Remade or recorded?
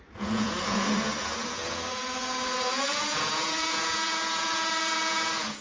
remade